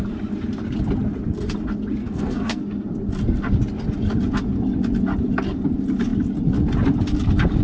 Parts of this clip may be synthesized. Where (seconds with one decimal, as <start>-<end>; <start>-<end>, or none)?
2.0-2.6